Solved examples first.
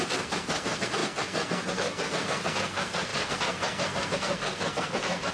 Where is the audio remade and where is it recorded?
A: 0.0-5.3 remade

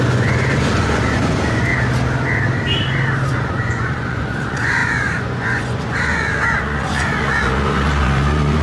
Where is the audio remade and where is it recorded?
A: 0.0-1.7 remade; 1.7-3.3 recorded; 3.3-8.6 remade

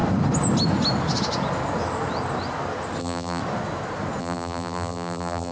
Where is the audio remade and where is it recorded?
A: 0.0-3.0 recorded; 3.0-3.4 remade; 3.4-4.2 recorded; 4.2-5.5 remade

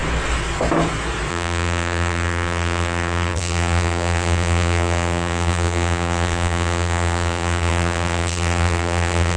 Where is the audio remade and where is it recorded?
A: 0.0-1.3 recorded; 1.3-9.4 remade

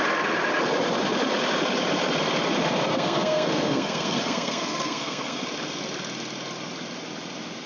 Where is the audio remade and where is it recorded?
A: 0.0-2.9 recorded; 2.9-5.4 remade; 5.4-7.7 recorded